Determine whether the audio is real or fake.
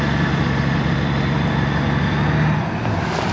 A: real